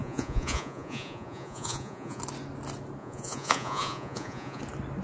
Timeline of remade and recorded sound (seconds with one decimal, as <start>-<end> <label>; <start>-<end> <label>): 0.0-2.2 remade; 2.2-3.0 recorded; 3.0-4.6 remade; 4.6-5.0 recorded